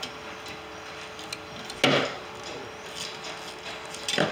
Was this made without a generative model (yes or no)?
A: yes